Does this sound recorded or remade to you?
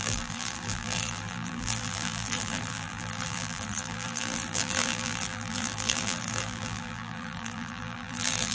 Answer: remade